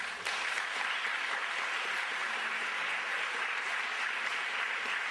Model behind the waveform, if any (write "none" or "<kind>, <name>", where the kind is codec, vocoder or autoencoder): vocoder, BigVGAN v2